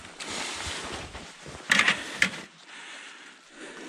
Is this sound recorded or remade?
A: recorded